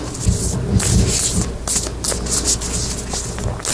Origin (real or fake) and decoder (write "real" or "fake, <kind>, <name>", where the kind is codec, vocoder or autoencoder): real